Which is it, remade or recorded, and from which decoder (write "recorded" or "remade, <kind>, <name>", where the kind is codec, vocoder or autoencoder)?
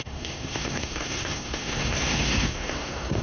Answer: remade, codec, SNAC